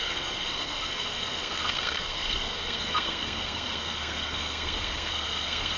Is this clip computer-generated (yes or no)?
yes